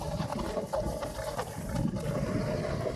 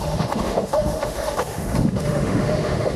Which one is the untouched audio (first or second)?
first